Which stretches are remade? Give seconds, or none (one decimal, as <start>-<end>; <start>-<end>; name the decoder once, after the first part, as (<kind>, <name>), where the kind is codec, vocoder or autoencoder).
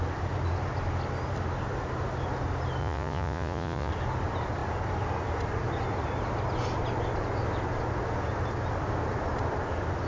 2.8-3.9 (vocoder, Vocos)